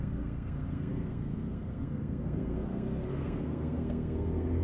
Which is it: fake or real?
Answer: fake